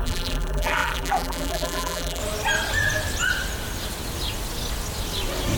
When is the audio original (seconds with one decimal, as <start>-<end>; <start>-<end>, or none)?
2.2-5.6